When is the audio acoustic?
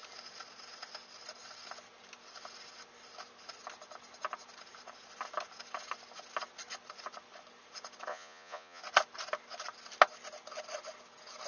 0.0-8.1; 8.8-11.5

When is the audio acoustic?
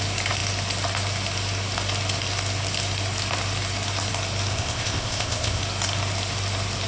0.0-4.5; 5.6-6.9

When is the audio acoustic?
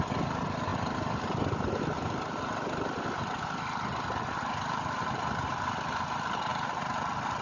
0.0-7.4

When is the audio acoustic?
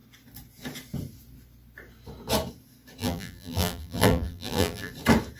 0.0-3.0; 4.9-5.4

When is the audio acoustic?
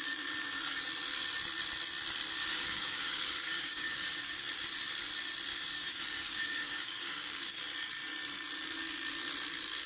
0.0-2.4; 4.2-5.5; 7.6-9.9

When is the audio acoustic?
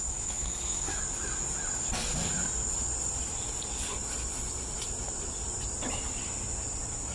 1.0-7.1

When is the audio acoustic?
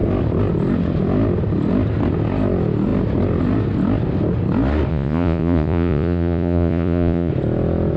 0.0-4.9; 7.3-8.0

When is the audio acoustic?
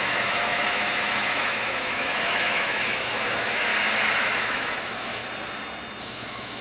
3.7-4.2; 5.2-6.0